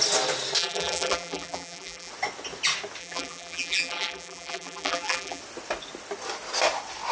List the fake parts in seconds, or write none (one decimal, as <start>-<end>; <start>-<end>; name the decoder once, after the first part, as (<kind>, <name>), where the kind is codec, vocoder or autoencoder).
0.6-2.1 (vocoder, BigVGAN v2); 3.0-5.4